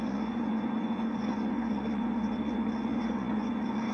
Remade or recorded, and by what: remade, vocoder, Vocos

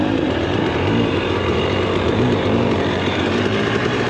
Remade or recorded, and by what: remade, vocoder, BigVGAN v2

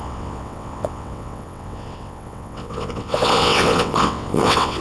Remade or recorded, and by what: remade, vocoder, WaveNeXt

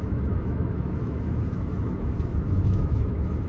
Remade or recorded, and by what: remade, autoencoder, DAC-VAE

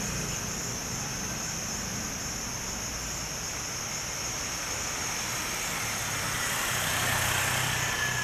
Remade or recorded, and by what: recorded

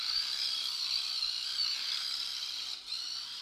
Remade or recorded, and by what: remade, vocoder, BigVGAN v2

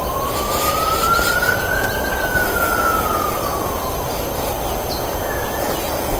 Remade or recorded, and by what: recorded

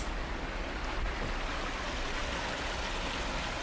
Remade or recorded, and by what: recorded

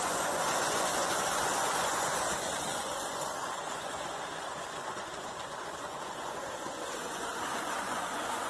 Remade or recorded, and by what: remade, vocoder, Vocos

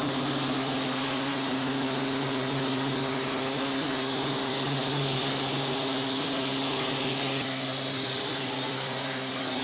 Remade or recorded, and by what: remade, vocoder, BigVGAN v2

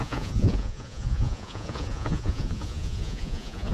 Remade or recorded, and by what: remade, vocoder, Vocos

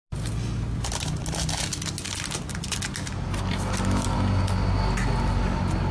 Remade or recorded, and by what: recorded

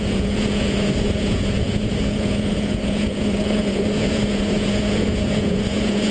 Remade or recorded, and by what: remade, vocoder, Vocos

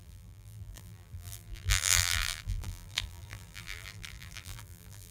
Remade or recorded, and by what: remade, vocoder, BigVGAN v2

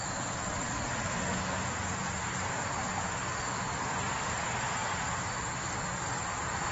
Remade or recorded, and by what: recorded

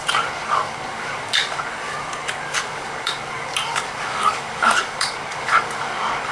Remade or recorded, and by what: remade, codec, DAC